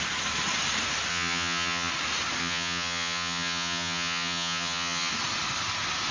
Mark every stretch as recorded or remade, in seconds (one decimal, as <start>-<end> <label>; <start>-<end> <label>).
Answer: 0.0-1.1 recorded; 1.1-1.9 remade; 1.9-2.4 recorded; 2.4-5.1 remade; 5.1-6.1 recorded